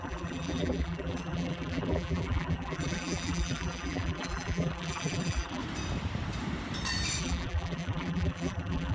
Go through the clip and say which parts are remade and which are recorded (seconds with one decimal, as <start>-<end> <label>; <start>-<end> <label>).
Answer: 0.0-5.6 remade; 5.6-7.2 recorded; 7.2-8.9 remade

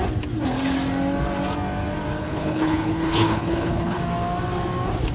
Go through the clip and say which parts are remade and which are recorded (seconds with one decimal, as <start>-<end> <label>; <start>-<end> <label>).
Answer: 0.0-2.2 recorded; 2.2-4.0 remade; 4.0-5.1 recorded

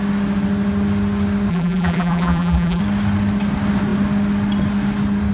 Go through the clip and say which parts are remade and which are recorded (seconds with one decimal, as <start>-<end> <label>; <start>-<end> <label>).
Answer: 0.0-1.5 recorded; 1.5-2.8 remade; 2.8-5.3 recorded

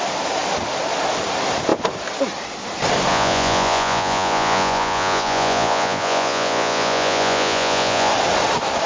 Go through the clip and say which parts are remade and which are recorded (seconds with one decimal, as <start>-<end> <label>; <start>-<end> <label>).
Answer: 0.0-3.1 recorded; 3.1-8.1 remade; 8.1-8.9 recorded